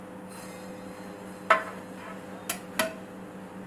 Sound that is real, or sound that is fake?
real